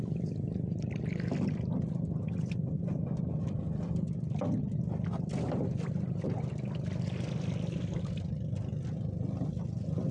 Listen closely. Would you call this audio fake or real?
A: real